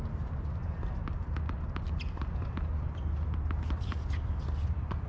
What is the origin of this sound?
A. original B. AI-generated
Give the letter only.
A